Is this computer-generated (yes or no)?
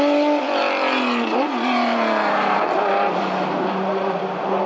no